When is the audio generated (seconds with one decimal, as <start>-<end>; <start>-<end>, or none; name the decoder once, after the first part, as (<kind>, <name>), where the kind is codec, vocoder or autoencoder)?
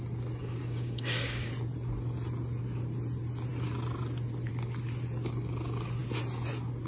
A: 0.4-1.5 (codec, DAC)